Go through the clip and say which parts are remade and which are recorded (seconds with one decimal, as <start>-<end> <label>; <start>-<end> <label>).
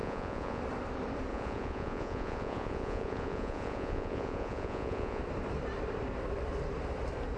0.0-0.6 remade; 0.6-1.3 recorded; 1.3-5.2 remade; 5.2-7.4 recorded